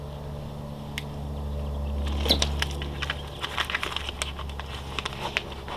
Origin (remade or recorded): recorded